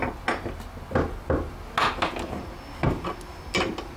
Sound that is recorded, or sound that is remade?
recorded